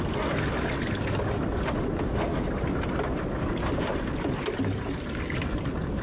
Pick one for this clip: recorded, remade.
recorded